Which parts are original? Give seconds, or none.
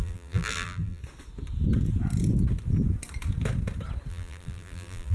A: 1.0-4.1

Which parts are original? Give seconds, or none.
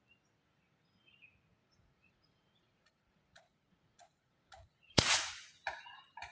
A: 0.0-1.5; 5.3-6.3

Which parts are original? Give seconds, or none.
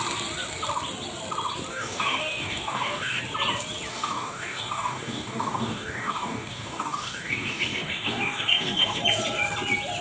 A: 0.0-1.7; 3.2-3.9; 9.0-10.0